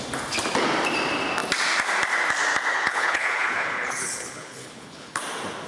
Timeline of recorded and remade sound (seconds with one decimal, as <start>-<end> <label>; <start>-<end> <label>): 0.0-2.7 recorded; 2.7-5.2 remade; 5.2-5.7 recorded